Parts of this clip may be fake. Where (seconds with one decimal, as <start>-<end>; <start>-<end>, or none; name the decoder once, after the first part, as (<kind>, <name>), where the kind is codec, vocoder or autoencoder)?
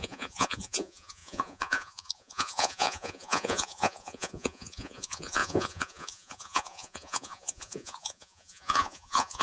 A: 0.0-9.4 (vocoder, Vocos)